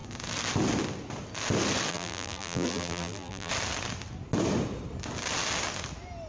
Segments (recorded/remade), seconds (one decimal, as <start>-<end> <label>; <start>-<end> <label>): 0.0-1.9 recorded; 1.9-3.5 remade; 3.5-6.3 recorded